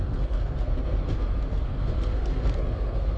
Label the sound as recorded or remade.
remade